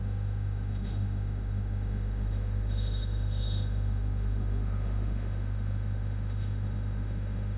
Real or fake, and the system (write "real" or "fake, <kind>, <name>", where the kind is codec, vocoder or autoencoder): fake, autoencoder, DAC-VAE